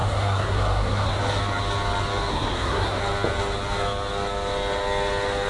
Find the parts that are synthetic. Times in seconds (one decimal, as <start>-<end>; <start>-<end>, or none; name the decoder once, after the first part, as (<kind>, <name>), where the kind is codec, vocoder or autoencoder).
0.0-1.2 (codec, SNAC); 2.3-3.0